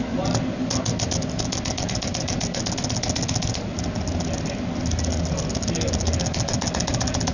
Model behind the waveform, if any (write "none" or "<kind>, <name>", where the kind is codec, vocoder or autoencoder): none